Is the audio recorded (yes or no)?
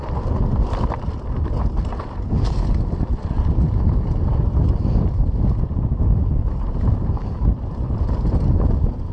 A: yes